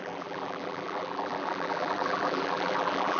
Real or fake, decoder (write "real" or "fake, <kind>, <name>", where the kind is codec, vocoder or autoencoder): fake, vocoder, BigVGAN v2